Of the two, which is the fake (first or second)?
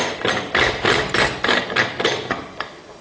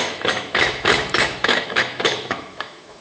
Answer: second